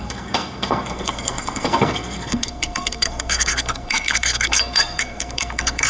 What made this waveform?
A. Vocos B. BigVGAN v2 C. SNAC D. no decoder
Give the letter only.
C